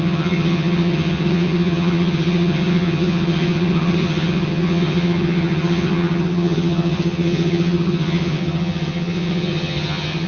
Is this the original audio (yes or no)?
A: no